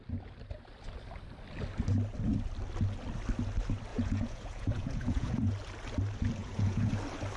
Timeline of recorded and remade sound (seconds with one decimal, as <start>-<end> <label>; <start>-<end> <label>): 0.0-3.9 recorded; 3.9-5.5 remade; 5.5-6.4 recorded; 6.4-6.9 remade; 6.9-7.4 recorded